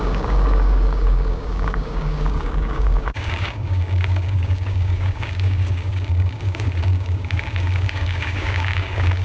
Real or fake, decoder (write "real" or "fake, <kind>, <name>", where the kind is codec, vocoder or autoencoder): fake, codec, DAC